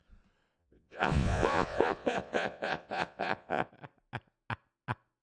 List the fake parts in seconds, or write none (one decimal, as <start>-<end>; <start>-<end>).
0.6-3.7